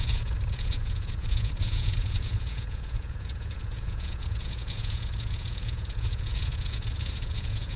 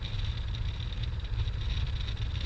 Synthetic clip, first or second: first